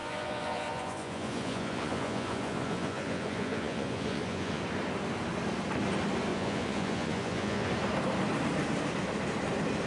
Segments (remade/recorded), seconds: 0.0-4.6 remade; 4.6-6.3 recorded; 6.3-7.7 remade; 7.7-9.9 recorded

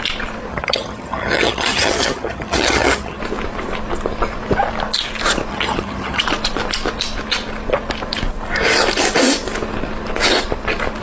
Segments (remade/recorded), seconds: 0.0-0.5 recorded; 0.5-3.2 remade; 3.2-5.5 recorded; 5.5-6.2 remade; 6.2-11.0 recorded

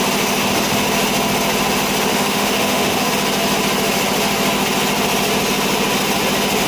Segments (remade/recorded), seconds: 0.0-2.1 recorded; 2.1-3.1 remade; 3.1-6.7 recorded

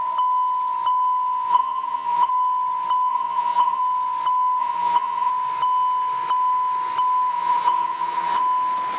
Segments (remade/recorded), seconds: 0.0-1.5 recorded; 1.5-2.3 remade; 2.3-3.1 recorded; 3.1-3.8 remade; 3.8-4.6 recorded; 4.6-5.3 remade; 5.3-7.3 recorded; 7.3-8.4 remade; 8.4-9.0 recorded

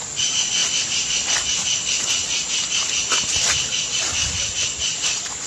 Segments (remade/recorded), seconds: 0.0-5.5 recorded

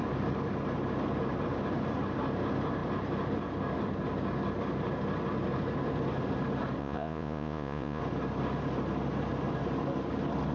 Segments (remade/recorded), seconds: 0.0-6.8 recorded; 6.8-8.0 remade; 8.0-10.5 recorded

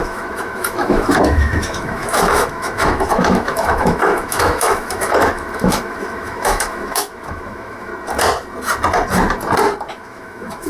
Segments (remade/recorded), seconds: 0.0-7.9 remade; 7.9-9.9 recorded; 9.9-10.7 remade